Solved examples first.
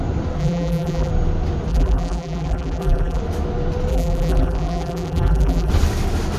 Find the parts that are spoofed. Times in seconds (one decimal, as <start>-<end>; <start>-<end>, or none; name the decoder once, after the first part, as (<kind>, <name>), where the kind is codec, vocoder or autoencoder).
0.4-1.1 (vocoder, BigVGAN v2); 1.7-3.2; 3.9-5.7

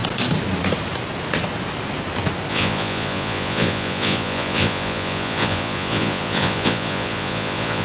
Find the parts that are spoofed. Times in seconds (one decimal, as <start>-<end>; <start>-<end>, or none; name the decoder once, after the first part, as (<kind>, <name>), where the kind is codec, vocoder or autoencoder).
2.5-7.8 (vocoder, Vocos)

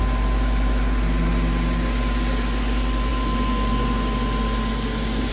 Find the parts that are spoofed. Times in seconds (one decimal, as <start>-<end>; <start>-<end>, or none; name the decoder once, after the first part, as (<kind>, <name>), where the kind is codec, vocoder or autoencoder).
none

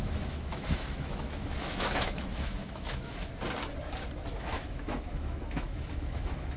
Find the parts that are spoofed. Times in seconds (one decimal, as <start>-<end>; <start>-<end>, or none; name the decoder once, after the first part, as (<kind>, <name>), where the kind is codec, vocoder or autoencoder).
0.0-3.3 (autoencoder, DAC-VAE); 4.4-6.6